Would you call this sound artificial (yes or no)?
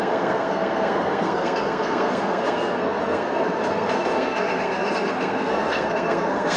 yes